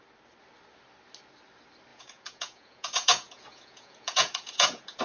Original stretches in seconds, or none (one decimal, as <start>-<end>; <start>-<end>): 0.0-1.9